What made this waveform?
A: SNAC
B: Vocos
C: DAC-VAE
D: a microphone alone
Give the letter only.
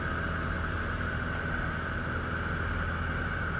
D